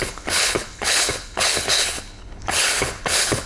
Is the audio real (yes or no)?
no